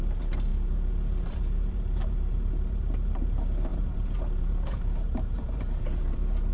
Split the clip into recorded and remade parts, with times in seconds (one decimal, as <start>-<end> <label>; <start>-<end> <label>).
0.0-6.5 remade